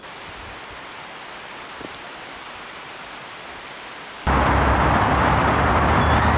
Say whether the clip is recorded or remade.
recorded